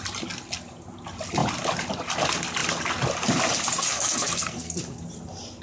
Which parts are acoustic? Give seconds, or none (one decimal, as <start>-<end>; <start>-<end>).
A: 0.0-3.9; 4.8-5.6